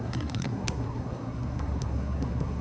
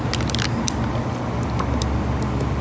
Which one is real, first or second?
second